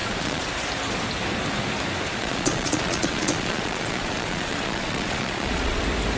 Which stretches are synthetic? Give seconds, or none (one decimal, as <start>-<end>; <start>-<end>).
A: 0.0-0.5; 2.1-5.8